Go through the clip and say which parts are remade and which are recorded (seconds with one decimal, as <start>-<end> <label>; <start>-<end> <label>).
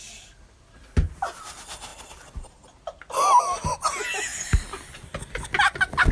0.0-6.1 recorded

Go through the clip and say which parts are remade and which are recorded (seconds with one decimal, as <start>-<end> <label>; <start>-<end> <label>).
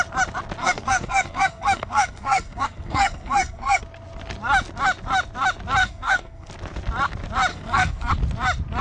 0.0-0.6 recorded; 0.6-3.8 remade; 3.8-5.8 recorded; 5.8-6.5 remade; 6.5-7.5 recorded; 7.5-8.1 remade; 8.1-8.8 recorded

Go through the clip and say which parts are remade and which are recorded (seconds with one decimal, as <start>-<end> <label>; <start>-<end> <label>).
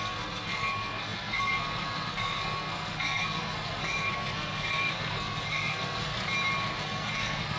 0.0-6.1 remade; 6.1-6.8 recorded; 6.8-7.6 remade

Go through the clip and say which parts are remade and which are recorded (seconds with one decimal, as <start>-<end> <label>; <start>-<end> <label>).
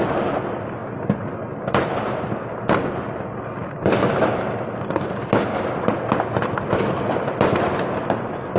0.0-8.6 recorded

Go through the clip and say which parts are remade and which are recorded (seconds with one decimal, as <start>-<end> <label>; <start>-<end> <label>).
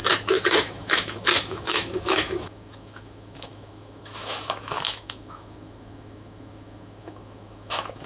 0.0-8.1 remade